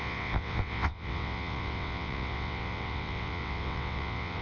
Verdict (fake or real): fake